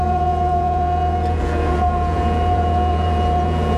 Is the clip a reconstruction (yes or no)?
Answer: yes